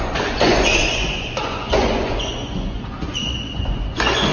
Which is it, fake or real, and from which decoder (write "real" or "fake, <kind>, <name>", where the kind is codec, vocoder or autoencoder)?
fake, vocoder, Vocos